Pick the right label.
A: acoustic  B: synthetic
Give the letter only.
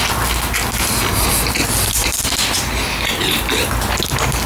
A